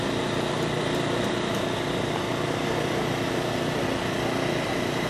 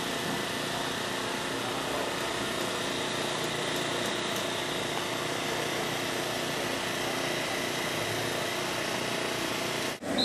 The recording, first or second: second